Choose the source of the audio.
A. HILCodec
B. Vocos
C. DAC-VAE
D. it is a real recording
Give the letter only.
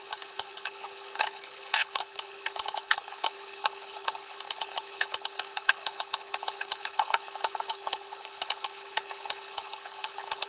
A